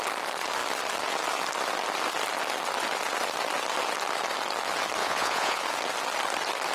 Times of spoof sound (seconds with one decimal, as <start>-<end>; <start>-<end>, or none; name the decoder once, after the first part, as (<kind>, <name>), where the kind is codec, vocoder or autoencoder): 5.0-5.6 (vocoder, Vocos)